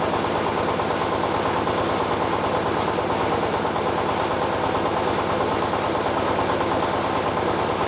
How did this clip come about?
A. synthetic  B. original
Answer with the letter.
B